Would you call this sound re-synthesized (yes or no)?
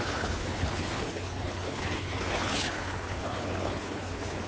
yes